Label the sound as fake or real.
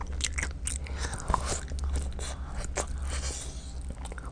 real